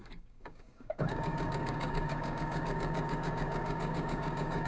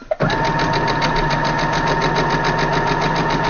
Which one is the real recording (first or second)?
second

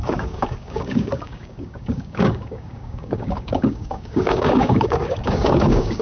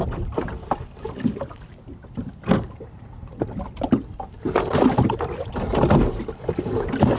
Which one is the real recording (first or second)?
second